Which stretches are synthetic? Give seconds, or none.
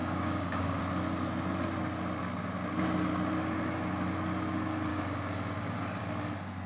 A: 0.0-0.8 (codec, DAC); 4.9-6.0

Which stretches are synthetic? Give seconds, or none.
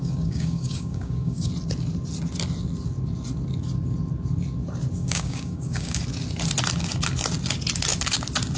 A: 0.0-1.5 (codec, DAC); 5.0-6.0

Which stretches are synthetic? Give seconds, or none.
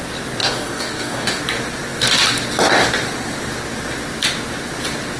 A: 0.4-1.4 (codec, DAC)